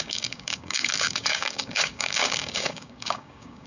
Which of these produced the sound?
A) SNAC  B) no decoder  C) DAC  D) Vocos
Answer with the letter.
C